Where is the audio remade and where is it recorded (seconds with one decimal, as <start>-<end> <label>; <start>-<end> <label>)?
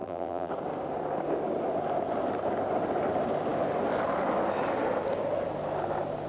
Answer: 0.0-0.5 remade; 0.5-6.3 recorded